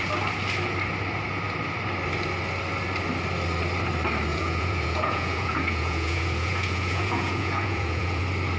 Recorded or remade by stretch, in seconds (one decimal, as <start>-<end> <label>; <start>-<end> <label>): 0.0-4.3 recorded; 4.3-8.2 remade; 8.2-8.6 recorded